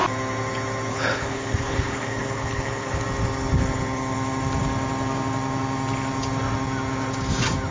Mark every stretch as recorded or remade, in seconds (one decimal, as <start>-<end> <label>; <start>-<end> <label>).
0.0-0.9 recorded; 0.9-3.0 remade; 3.0-7.7 recorded